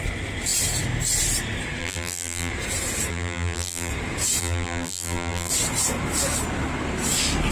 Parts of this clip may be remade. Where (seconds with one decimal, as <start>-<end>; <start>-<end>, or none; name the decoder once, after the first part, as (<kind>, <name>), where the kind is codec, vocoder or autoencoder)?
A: 1.8-2.5 (vocoder, BigVGAN v2); 3.1-3.9; 4.4-5.5